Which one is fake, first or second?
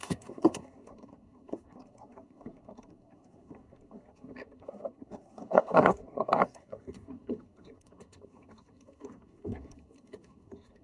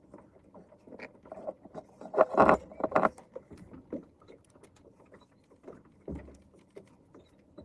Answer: first